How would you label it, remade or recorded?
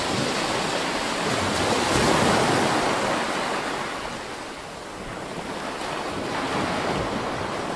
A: recorded